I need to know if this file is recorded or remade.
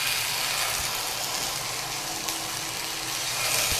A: recorded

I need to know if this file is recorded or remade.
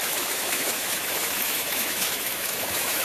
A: remade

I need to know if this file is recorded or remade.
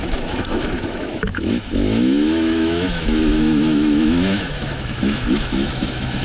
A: remade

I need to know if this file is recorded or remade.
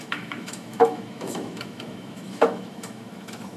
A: remade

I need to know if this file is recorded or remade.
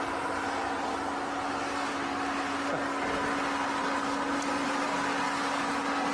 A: recorded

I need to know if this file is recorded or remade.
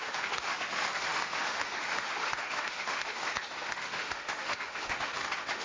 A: remade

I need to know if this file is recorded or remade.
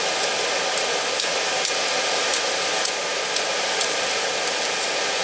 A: recorded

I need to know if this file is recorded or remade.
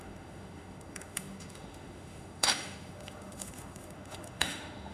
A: remade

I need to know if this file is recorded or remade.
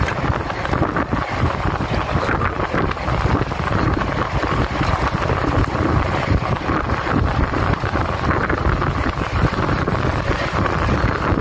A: recorded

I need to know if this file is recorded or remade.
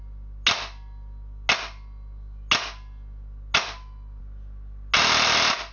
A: recorded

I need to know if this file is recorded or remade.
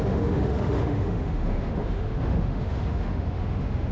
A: remade